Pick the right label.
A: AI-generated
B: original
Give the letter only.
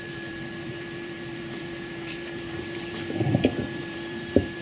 A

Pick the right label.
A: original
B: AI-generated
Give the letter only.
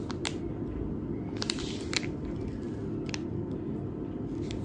A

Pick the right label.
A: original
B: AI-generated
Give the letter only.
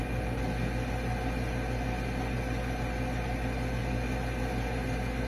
A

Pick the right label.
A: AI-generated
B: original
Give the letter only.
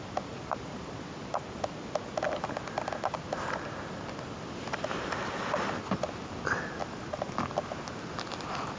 B